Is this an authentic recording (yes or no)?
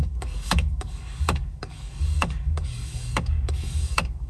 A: no